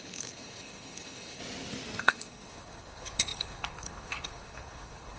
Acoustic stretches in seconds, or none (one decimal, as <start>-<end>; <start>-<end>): 1.4-2.0